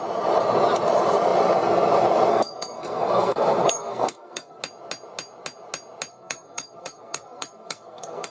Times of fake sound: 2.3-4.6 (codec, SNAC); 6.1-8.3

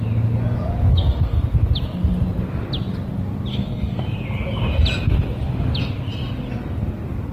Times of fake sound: 0.9-1.4 (codec, SNAC); 3.5-4.0